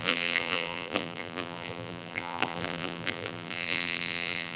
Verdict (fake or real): fake